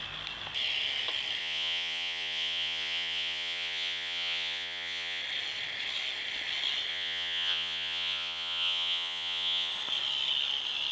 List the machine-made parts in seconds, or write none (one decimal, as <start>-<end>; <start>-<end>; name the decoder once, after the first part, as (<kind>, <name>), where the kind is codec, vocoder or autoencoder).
1.4-5.2 (vocoder, Vocos); 6.9-9.7